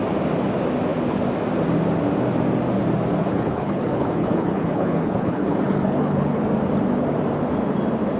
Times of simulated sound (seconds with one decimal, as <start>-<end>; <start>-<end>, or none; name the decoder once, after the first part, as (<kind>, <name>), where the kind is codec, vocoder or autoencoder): 3.3-6.4 (codec, HILCodec)